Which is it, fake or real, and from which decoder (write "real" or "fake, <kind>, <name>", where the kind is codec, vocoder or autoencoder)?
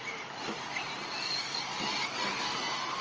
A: real